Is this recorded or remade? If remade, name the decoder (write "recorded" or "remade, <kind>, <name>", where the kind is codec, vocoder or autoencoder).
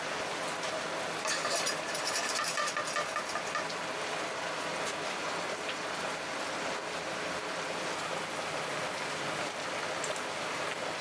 recorded